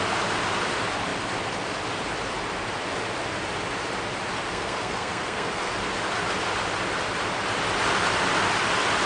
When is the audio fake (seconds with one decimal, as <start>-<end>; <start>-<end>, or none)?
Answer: 4.5-5.7